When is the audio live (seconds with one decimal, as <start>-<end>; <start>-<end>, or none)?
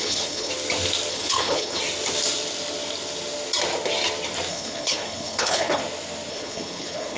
0.5-1.1; 1.8-4.5; 5.8-6.3